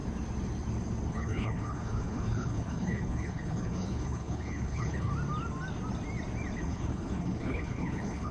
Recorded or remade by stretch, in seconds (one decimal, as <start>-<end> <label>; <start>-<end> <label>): 0.0-1.1 recorded; 1.1-5.1 remade; 5.1-6.6 recorded; 6.6-8.3 remade